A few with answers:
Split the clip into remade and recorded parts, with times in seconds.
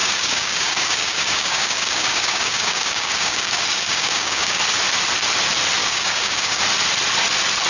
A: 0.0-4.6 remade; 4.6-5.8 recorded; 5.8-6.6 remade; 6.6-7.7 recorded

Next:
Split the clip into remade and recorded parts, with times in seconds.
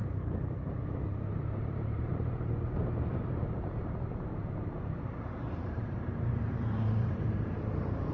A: 0.0-1.4 recorded; 1.4-4.3 remade; 4.3-5.4 recorded; 5.4-8.1 remade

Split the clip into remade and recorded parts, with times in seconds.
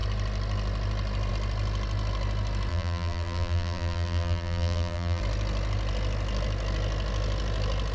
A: 0.0-2.7 recorded; 2.7-5.2 remade; 5.2-7.9 recorded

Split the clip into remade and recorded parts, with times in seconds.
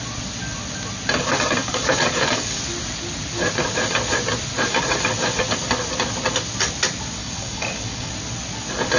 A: 0.0-1.6 recorded; 1.6-2.6 remade; 2.6-7.2 recorded; 7.2-8.1 remade; 8.1-9.0 recorded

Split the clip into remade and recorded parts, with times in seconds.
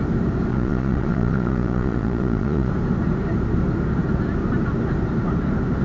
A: 0.0-0.5 recorded; 0.5-2.7 remade; 2.7-5.8 recorded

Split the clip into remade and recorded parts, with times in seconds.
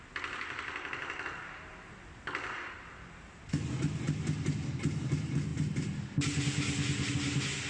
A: 0.0-7.7 recorded